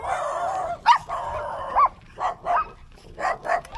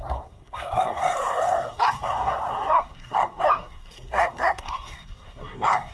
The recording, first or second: first